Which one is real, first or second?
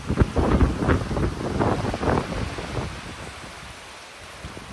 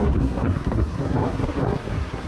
first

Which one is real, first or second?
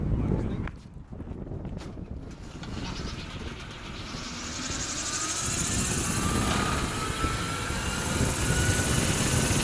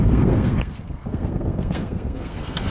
first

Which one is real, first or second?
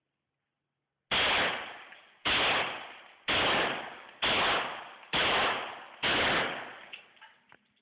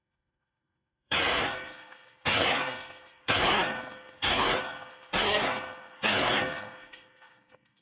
first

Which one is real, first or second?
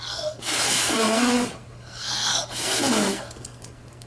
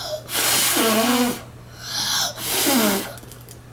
second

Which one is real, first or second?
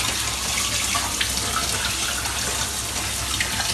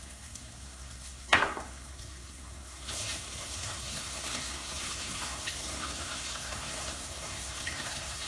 first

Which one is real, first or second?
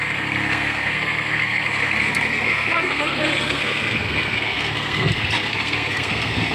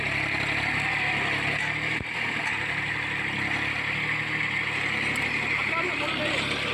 second